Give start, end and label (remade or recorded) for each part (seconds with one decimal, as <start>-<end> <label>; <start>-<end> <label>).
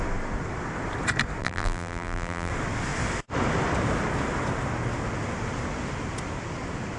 0.0-1.4 recorded; 1.4-2.5 remade; 2.5-7.0 recorded